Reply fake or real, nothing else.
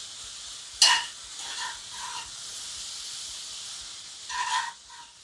real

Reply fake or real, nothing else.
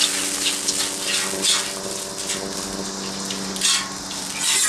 real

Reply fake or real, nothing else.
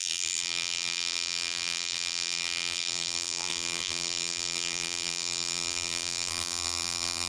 fake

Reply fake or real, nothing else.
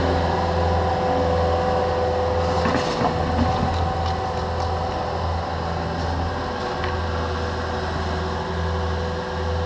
real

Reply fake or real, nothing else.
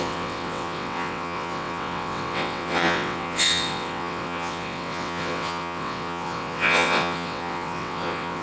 fake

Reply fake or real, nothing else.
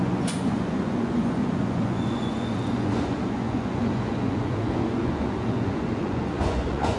fake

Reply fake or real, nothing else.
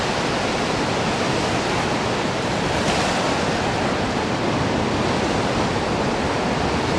real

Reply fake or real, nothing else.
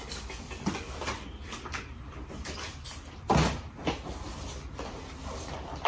real